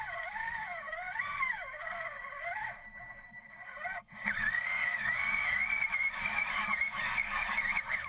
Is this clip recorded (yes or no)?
no